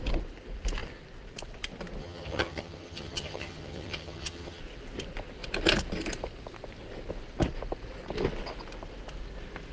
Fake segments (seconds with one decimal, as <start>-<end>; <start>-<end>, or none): 2.0-4.6